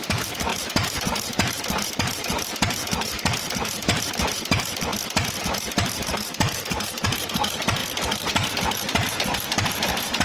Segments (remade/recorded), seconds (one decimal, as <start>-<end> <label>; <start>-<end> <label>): 0.0-4.9 remade; 4.9-5.4 recorded; 5.4-7.8 remade; 7.8-8.5 recorded; 8.5-10.2 remade